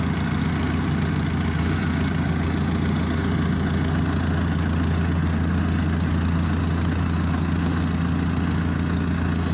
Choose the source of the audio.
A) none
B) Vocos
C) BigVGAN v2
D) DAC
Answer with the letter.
A